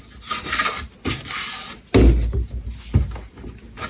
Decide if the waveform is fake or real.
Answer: real